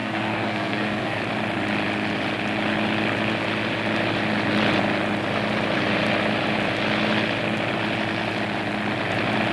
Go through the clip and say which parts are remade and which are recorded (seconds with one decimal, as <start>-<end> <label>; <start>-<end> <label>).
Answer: 0.0-1.2 remade; 1.2-9.5 recorded